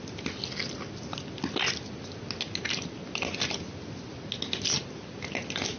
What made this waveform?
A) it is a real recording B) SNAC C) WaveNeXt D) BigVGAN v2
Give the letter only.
A